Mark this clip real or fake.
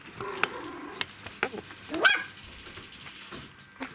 real